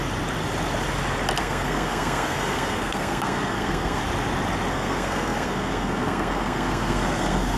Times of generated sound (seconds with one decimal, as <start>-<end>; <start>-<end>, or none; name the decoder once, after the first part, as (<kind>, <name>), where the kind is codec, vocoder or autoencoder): 1.4-4.0 (codec, SNAC); 4.7-7.6